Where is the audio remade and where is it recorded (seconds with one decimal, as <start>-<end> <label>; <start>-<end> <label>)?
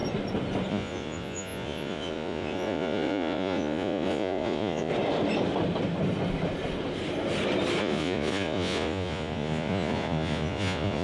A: 0.0-0.7 recorded; 0.7-4.9 remade; 4.9-7.8 recorded; 7.8-11.0 remade